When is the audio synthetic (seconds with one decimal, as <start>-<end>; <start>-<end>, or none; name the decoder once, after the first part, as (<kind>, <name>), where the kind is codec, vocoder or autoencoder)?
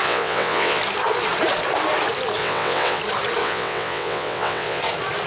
0.0-0.8 (vocoder, WaveNeXt); 2.4-3.0; 3.4-4.8